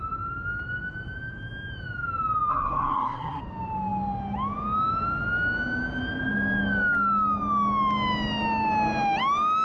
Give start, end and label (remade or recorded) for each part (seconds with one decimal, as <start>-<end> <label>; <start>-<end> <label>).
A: 0.0-2.5 recorded; 2.5-3.4 remade; 3.4-9.6 recorded